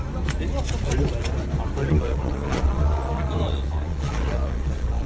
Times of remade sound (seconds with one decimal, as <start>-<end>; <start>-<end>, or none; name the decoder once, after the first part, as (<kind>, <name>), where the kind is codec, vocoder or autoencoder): 1.8-5.1 (vocoder, Vocos)